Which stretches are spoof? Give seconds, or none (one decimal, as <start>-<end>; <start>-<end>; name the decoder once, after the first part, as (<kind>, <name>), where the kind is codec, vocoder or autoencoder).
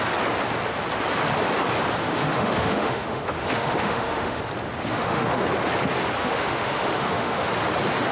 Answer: 2.0-4.4 (autoencoder, DAC-VAE); 4.9-5.4; 6.2-7.5